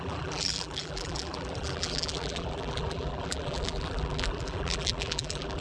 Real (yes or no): no